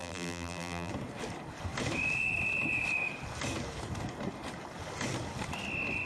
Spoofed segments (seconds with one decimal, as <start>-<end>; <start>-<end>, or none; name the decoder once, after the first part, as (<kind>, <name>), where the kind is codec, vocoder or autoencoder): 0.0-0.9 (vocoder, BigVGAN v2)